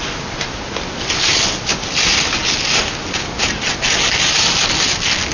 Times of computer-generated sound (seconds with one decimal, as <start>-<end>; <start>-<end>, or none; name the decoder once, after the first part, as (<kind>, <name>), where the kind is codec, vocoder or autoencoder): none